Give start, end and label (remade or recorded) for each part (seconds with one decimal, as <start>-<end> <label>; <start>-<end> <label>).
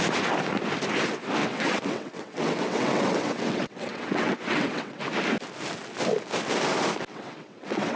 0.0-1.4 recorded; 1.4-5.0 remade; 5.0-7.1 recorded; 7.1-8.0 remade